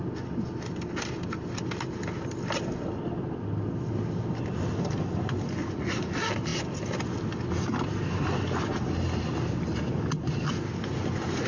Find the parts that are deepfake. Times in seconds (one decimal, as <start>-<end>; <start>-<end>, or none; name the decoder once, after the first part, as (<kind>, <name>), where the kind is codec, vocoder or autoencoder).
5.6-6.1 (vocoder, Vocos)